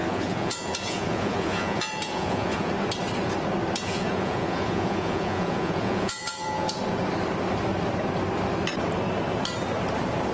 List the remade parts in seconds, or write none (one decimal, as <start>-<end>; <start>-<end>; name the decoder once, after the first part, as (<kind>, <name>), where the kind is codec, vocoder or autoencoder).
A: 0.0-2.7 (vocoder, Vocos); 3.8-6.8